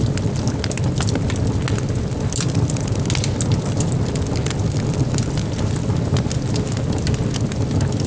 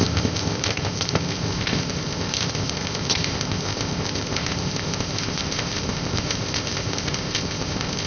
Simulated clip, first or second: second